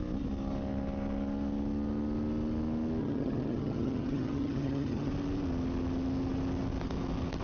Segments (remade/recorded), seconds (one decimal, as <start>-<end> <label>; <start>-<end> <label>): 0.0-3.0 recorded; 3.0-5.1 remade; 5.1-7.4 recorded